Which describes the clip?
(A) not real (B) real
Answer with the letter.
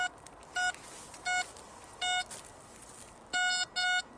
B